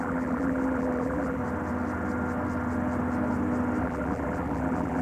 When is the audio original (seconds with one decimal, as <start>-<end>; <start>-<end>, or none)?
1.4-3.8

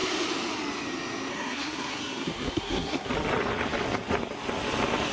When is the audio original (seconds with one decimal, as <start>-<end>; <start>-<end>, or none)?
0.0-1.3; 3.1-5.1